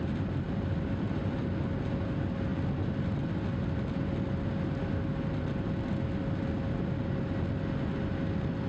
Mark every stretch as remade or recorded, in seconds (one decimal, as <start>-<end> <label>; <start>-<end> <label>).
0.0-8.7 recorded